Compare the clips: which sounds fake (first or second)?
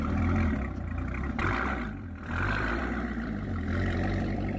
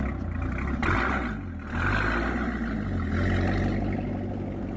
first